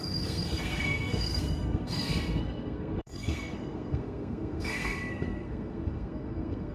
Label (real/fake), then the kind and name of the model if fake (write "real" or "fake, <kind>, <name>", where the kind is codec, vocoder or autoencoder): fake, codec, SNAC